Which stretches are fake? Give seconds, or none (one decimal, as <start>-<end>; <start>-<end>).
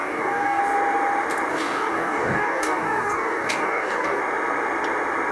0.0-0.6; 1.5-4.2